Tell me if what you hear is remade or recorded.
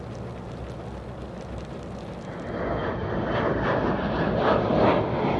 recorded